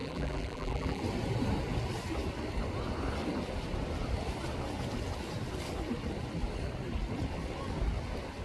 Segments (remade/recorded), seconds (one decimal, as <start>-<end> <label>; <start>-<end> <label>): 0.0-1.0 remade; 1.0-8.4 recorded